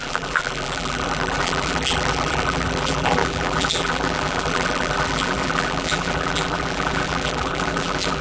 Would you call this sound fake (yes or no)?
yes